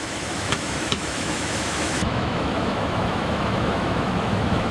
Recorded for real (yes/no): no